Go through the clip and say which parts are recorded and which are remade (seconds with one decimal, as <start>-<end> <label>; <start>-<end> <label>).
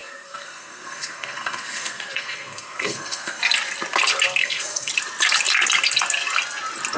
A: 0.0-3.4 remade; 3.4-4.4 recorded; 4.4-4.9 remade; 4.9-7.0 recorded